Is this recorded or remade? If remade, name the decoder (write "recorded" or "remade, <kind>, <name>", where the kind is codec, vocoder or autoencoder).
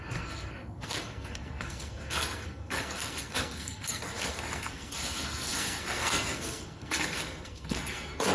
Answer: remade, codec, SNAC